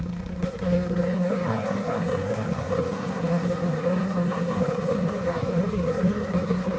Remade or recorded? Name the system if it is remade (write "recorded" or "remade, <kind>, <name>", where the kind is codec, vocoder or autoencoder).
remade, codec, SNAC